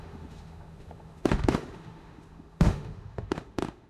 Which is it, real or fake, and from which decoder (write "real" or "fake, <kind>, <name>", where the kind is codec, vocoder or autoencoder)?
fake, autoencoder, DAC-VAE